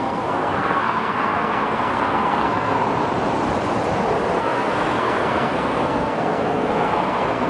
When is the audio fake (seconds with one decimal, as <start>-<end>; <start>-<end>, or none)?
0.0-2.8; 4.4-7.5